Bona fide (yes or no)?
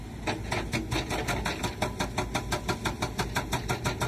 yes